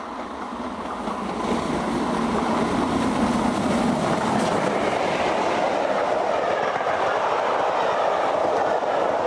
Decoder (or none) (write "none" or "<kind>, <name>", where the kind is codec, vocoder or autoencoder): none